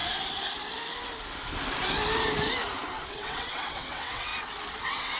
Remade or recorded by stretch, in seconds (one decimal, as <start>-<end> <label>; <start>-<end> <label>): 0.0-3.1 recorded; 3.1-4.3 remade; 4.3-4.8 recorded; 4.8-5.2 remade